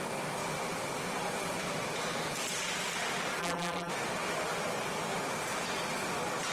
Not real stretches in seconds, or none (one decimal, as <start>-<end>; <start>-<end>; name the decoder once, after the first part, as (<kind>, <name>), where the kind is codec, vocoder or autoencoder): 3.4-3.9 (vocoder, BigVGAN v2)